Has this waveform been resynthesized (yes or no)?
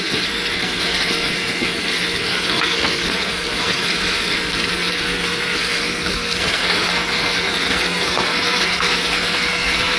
yes